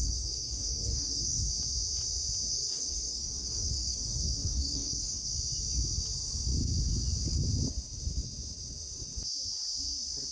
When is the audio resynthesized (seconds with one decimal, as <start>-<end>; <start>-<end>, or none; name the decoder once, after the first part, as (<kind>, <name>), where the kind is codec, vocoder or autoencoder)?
0.0-1.5 (codec, DAC); 2.5-5.3